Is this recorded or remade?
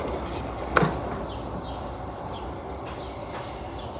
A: recorded